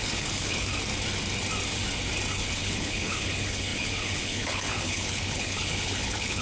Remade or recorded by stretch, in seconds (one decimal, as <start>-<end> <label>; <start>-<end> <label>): 0.0-0.7 remade; 0.7-2.3 recorded; 2.3-6.4 remade